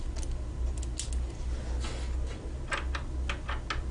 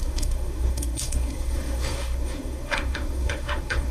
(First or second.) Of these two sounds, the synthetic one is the second